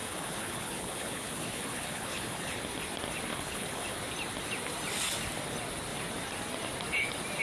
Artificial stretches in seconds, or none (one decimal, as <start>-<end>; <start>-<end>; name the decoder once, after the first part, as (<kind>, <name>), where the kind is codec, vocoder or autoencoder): 0.0-2.6 (codec, HILCodec); 3.3-4.0